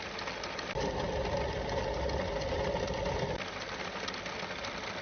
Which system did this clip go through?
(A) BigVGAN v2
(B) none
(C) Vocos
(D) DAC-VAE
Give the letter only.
A